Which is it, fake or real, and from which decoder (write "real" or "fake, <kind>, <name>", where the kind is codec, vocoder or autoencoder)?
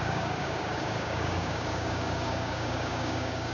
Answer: fake, codec, DAC